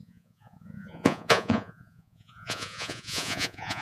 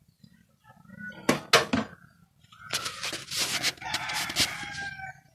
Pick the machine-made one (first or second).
first